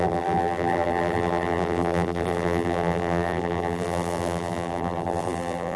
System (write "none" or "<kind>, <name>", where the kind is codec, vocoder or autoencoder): vocoder, BigVGAN v2